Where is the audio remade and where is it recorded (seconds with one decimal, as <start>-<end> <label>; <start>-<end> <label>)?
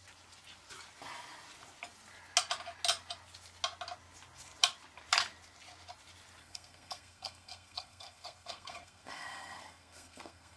0.0-6.4 recorded; 6.4-10.6 remade